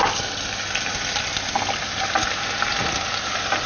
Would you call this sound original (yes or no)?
yes